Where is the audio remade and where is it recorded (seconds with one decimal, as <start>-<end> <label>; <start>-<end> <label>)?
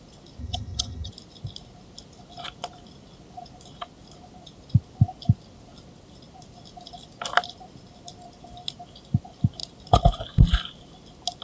0.0-0.4 recorded; 0.4-1.1 remade; 1.1-11.4 recorded